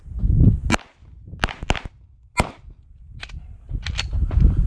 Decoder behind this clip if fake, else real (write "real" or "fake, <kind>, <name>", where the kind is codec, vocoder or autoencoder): real